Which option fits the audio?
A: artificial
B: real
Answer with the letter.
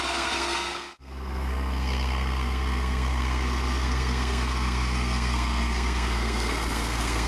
A